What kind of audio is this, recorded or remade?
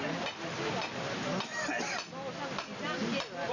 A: recorded